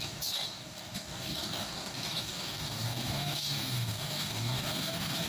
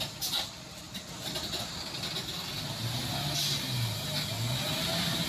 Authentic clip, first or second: second